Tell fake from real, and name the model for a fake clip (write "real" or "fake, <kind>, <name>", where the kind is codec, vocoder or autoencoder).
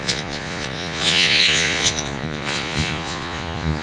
fake, vocoder, Vocos